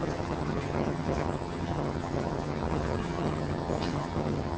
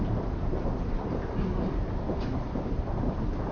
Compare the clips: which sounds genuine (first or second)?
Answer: second